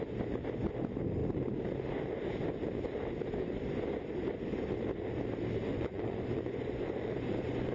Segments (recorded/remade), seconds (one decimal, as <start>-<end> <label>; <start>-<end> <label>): 0.0-5.7 recorded; 5.7-7.7 remade

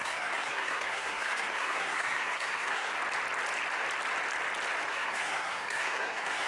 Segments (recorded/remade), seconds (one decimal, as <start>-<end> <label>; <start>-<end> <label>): 0.0-2.9 remade; 2.9-4.9 recorded; 4.9-6.5 remade

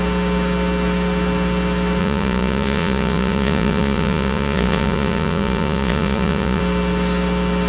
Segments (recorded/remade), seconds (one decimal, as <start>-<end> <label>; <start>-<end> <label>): 0.0-2.0 recorded; 2.0-6.6 remade; 6.6-7.7 recorded